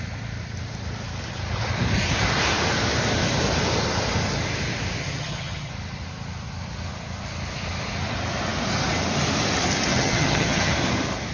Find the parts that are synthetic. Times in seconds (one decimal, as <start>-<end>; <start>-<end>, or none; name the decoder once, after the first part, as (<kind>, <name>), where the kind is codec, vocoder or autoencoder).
5.0-5.7 (vocoder, HiFi-GAN); 9.9-10.7